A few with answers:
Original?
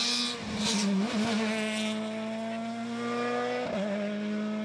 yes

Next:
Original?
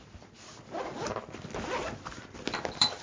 yes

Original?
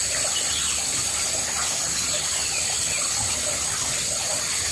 yes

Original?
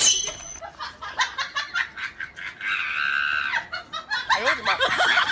yes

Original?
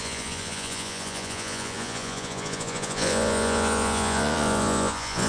no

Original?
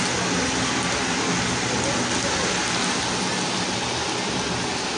yes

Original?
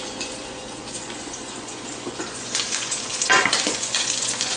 no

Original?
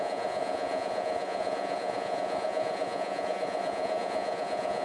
no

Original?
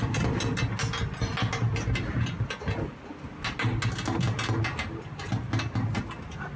yes